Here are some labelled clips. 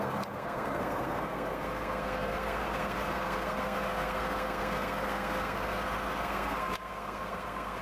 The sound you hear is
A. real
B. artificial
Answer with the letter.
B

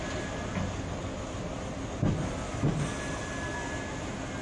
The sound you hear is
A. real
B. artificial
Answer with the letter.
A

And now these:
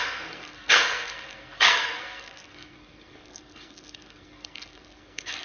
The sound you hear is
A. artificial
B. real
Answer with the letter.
A